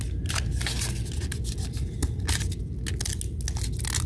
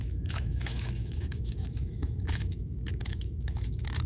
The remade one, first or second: second